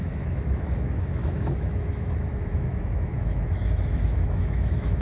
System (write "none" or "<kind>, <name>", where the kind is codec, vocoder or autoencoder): autoencoder, DAC-VAE